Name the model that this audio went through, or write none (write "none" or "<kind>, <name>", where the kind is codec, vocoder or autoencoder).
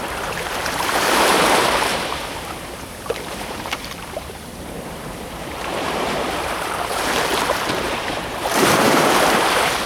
vocoder, BigVGAN v2